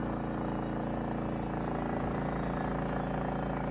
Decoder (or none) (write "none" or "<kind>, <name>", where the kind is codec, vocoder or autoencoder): none